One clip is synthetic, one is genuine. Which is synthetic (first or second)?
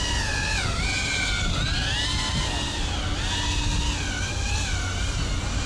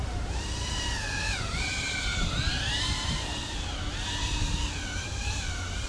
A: second